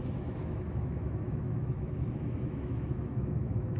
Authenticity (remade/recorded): remade